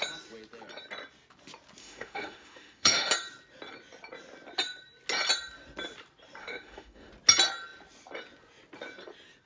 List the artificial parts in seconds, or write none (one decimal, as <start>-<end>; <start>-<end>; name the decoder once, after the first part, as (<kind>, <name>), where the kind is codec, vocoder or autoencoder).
1.8-3.1 (autoencoder, DAC-VAE); 6.4-7.1